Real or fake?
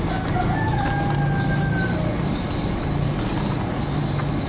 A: real